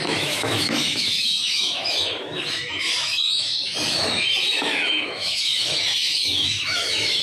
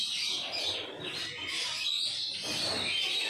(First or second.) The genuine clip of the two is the second